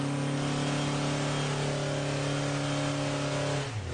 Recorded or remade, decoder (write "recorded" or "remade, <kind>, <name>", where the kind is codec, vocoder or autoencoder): recorded